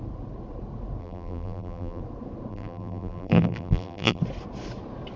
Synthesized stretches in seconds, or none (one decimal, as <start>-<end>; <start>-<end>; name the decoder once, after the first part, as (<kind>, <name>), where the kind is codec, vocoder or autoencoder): 1.0-2.0 (vocoder, BigVGAN v2); 2.5-4.2